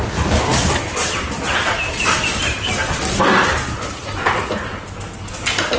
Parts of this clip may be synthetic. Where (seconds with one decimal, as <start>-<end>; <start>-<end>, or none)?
none